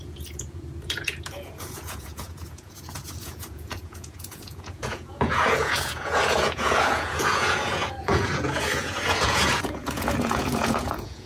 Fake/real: fake